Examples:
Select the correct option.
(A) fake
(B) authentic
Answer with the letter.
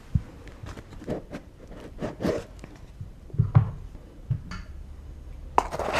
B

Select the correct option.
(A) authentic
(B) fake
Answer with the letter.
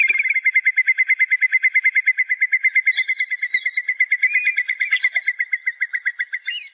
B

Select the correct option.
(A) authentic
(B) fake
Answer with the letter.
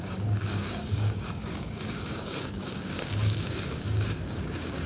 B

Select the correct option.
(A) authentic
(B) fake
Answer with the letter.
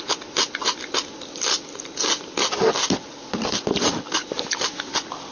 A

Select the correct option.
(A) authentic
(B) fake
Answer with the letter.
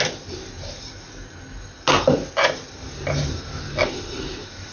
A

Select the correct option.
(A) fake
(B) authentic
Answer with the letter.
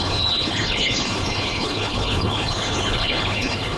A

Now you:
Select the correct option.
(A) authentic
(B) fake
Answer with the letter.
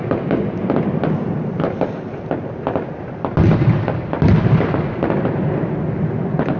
A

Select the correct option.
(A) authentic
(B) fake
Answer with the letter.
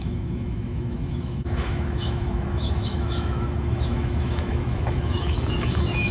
B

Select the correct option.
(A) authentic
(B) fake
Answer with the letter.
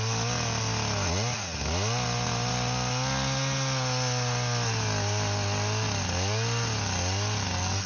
A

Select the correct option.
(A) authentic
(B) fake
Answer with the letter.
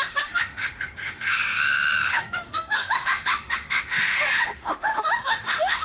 B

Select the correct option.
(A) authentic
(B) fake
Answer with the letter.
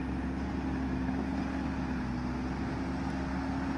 A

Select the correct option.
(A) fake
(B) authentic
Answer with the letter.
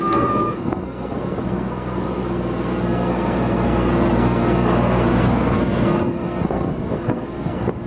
A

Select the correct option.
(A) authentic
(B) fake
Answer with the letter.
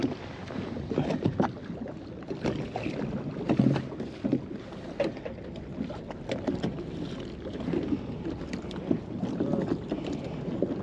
A